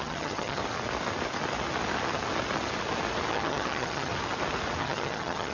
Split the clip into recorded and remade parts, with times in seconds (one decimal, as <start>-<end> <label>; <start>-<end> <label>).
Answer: 0.0-0.6 remade; 0.6-3.3 recorded; 3.3-4.1 remade; 4.1-4.8 recorded; 4.8-5.5 remade